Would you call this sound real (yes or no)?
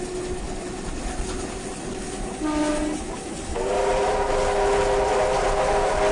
yes